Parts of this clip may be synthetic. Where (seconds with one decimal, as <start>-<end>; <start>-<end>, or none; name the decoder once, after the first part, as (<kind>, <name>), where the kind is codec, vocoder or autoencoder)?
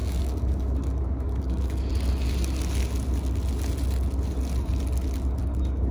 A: 0.0-1.9 (codec, DAC); 5.4-5.9